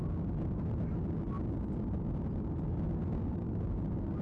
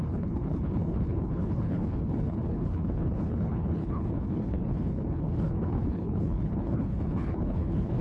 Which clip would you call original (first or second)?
first